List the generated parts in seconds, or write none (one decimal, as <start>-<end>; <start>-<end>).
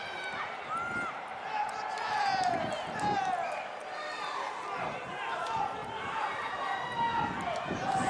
5.8-6.6